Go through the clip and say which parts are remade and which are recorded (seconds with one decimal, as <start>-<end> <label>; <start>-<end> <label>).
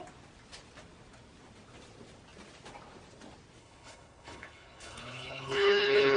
0.0-3.6 recorded; 3.6-6.2 remade